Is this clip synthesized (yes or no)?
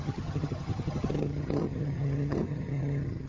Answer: yes